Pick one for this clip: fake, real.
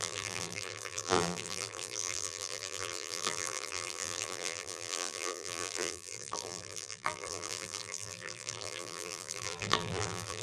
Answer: fake